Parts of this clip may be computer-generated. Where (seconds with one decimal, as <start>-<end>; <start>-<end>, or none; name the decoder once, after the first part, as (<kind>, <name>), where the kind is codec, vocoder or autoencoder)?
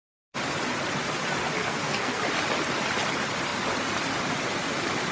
1.6-2.2 (codec, SNAC)